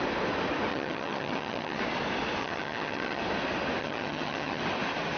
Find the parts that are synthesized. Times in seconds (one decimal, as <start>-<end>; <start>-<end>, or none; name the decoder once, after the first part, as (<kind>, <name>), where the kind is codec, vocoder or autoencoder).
0.7-1.8 (vocoder, HiFi-GAN); 2.4-3.2; 3.8-4.6